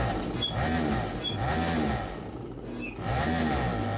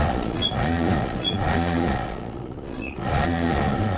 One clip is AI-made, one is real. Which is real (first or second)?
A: first